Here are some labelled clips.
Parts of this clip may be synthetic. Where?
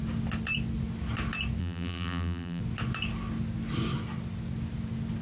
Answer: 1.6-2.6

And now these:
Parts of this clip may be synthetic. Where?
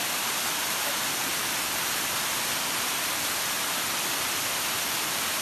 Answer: none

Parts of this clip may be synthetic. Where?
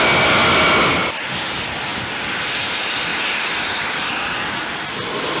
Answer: 3.1-4.1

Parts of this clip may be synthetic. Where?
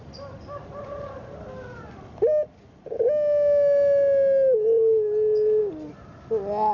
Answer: none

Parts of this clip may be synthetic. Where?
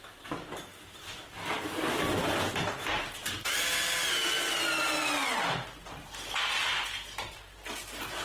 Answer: 0.7-1.9; 3.2-3.8; 5.8-6.6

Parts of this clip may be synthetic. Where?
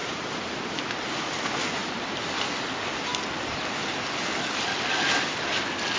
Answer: none